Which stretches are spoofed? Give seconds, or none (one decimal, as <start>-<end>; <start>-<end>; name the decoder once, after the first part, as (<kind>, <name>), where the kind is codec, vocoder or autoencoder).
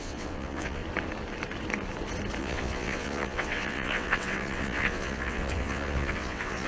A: 0.0-0.8 (vocoder, WaveNeXt); 2.4-6.7